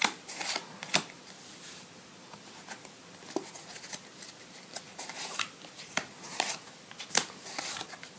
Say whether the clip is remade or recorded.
recorded